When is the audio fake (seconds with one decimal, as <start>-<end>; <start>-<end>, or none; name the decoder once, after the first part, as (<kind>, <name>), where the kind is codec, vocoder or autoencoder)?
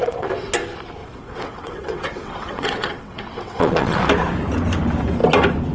0.0-0.5 (vocoder, WaveNeXt); 1.0-4.0